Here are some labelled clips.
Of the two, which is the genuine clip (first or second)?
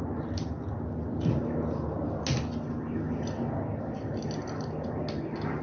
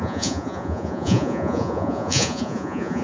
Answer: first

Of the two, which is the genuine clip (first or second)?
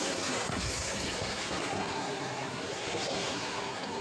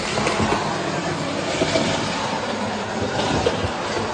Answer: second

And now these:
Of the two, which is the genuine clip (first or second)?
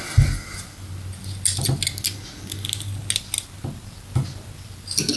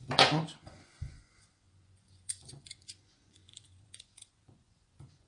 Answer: first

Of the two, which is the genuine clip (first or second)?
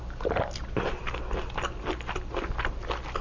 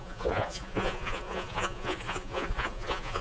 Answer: first